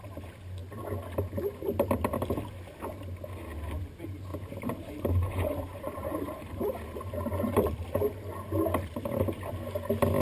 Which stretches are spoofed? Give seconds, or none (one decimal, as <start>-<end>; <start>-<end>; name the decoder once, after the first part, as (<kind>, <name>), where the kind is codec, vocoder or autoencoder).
4.3-7.7 (vocoder, BigVGAN v2)

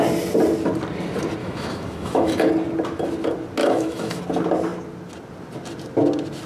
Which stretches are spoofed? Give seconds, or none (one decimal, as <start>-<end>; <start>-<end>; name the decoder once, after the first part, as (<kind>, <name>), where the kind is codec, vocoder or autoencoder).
1.4-2.5 (autoencoder, DAC-VAE); 3.6-4.2